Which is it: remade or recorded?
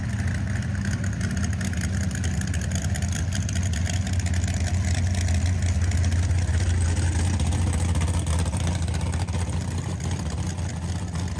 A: recorded